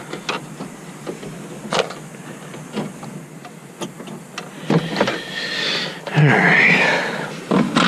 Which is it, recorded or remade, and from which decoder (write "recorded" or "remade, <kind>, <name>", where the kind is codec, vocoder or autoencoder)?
recorded